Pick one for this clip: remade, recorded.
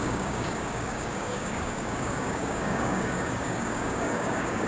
remade